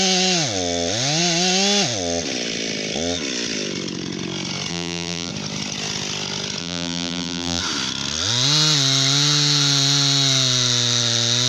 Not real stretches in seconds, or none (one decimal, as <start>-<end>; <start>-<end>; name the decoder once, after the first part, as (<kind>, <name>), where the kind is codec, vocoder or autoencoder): 4.7-5.3 (vocoder, BigVGAN v2); 6.6-7.6